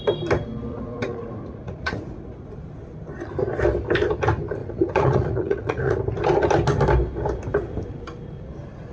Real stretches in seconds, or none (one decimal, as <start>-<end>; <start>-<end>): 0.0-0.7; 2.6-4.6; 6.0-8.9